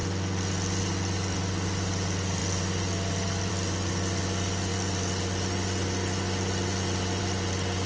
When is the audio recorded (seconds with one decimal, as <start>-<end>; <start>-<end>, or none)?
0.0-7.9